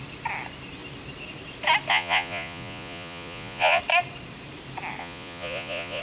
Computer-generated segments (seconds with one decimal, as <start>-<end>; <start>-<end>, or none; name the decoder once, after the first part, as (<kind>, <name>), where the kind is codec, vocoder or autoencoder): 1.9-3.8 (vocoder, Vocos); 5.0-6.0